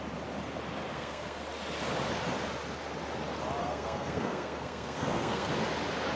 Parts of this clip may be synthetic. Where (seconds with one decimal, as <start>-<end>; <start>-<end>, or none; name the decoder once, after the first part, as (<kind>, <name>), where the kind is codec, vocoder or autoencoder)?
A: 0.9-1.4 (codec, SNAC); 3.6-5.5